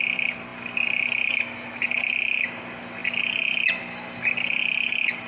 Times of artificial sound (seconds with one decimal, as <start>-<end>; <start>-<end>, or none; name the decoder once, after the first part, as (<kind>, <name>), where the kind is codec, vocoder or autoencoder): none

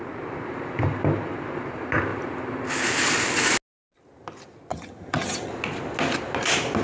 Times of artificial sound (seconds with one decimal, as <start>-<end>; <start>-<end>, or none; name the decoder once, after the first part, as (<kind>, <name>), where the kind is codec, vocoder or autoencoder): 4.7-5.5 (vocoder, HiFi-GAN)

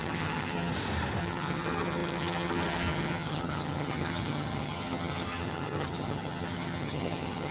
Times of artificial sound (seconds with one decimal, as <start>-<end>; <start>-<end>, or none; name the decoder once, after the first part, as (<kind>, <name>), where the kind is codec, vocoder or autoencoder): 0.0-0.7 (vocoder, HiFi-GAN); 1.2-7.5

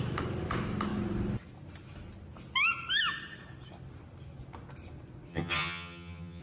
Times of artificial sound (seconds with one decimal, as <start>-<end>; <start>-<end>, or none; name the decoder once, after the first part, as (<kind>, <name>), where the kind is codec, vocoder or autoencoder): 5.3-6.4 (vocoder, HiFi-GAN)

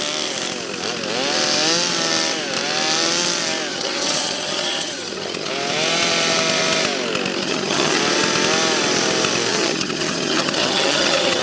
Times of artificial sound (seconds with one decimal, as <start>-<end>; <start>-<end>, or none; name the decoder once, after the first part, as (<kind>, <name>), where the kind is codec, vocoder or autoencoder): 3.7-5.5 (vocoder, HiFi-GAN); 7.4-8.0; 9.5-11.4